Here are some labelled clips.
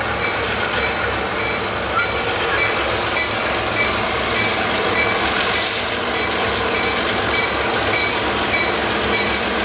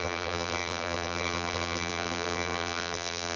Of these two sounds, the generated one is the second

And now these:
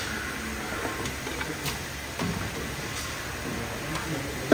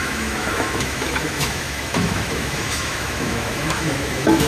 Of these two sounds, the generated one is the second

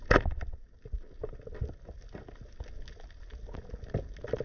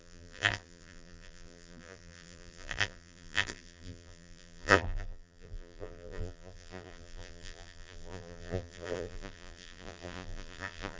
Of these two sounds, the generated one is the second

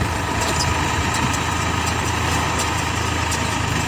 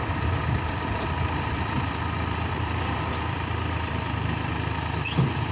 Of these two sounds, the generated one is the second